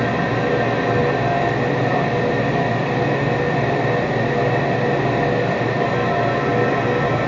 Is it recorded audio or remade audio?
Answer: recorded